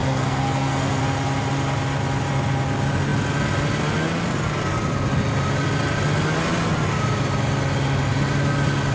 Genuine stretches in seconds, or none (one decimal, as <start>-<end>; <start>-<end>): 1.0-8.9